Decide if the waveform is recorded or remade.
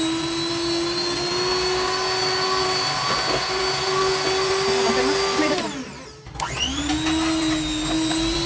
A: recorded